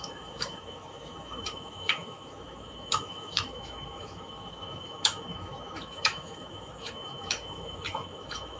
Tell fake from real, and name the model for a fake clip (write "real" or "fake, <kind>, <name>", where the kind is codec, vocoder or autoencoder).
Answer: fake, autoencoder, DAC-VAE